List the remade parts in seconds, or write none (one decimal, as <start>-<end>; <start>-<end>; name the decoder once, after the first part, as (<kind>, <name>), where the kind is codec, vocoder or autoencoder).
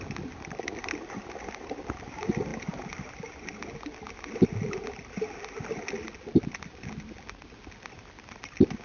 none